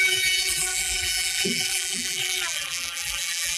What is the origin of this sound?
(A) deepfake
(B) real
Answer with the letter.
A